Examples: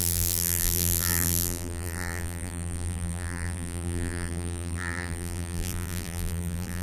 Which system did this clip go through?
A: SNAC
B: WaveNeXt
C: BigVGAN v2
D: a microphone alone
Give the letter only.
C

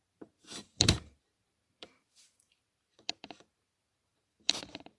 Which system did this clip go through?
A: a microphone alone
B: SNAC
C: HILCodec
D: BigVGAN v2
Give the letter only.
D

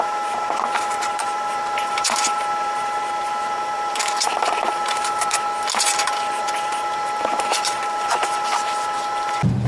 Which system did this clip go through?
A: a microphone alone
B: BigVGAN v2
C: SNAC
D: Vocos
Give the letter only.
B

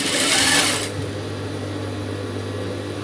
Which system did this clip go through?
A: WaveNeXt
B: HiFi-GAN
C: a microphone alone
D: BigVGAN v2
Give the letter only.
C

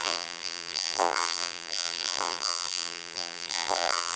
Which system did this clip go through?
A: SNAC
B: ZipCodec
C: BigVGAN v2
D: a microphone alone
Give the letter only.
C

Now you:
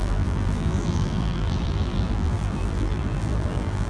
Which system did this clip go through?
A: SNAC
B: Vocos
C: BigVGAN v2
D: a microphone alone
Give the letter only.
C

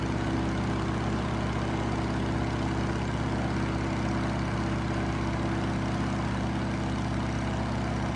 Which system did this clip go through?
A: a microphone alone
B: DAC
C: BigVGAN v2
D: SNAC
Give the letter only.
A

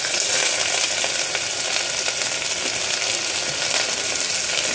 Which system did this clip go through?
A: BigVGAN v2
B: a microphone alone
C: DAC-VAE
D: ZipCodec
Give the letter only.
B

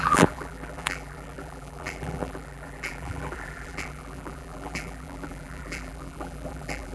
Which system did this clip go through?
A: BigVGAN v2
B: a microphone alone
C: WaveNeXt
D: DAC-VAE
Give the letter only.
A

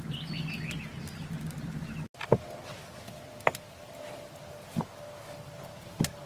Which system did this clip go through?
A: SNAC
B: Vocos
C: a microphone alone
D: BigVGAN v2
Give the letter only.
C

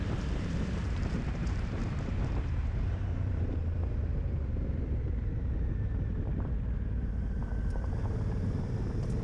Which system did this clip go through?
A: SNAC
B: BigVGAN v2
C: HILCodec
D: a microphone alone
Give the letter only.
B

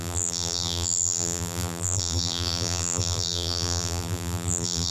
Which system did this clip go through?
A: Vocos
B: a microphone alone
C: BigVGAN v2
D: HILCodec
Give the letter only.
C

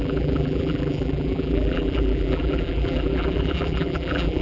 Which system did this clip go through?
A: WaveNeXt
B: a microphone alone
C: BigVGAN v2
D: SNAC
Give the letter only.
C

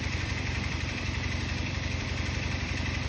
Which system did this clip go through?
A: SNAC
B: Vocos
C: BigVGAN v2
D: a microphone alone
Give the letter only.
C